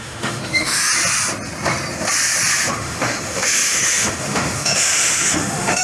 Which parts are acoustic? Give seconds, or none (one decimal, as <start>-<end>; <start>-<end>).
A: 0.9-2.7